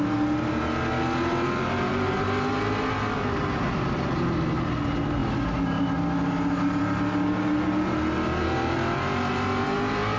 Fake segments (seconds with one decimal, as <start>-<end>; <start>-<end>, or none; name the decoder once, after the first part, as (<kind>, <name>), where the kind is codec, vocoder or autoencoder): none

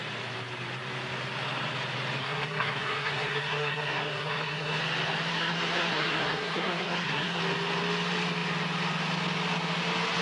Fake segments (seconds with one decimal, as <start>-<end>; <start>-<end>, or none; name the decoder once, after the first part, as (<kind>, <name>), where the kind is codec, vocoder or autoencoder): 2.2-4.8 (codec, SNAC); 5.3-7.4

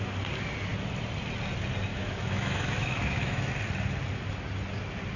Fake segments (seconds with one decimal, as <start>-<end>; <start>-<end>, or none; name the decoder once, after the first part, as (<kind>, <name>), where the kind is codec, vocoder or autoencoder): 1.9-3.5 (autoencoder, DAC-VAE)

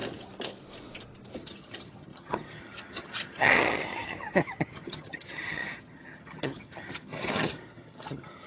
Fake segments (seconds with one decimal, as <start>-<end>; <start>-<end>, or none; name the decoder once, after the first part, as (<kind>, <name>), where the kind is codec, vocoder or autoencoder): 1.4-8.5 (vocoder, HiFi-GAN)

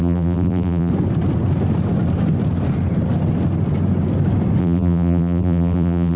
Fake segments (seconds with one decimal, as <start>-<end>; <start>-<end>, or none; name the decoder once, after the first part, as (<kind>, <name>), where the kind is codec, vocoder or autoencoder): 0.0-0.9 (vocoder, BigVGAN v2); 4.6-6.2

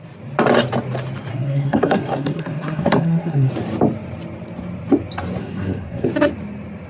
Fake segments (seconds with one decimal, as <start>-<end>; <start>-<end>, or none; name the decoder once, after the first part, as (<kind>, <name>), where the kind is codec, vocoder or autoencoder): 1.3-3.5 (codec, SNAC); 5.4-6.1

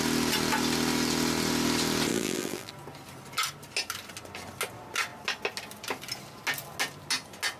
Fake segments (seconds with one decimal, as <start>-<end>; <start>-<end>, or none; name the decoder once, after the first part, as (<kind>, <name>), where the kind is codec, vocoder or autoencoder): 2.1-2.7 (vocoder, BigVGAN v2)

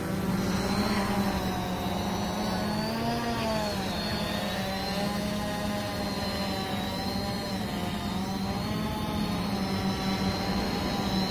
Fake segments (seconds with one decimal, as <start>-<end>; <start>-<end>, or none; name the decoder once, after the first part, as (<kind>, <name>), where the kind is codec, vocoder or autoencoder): none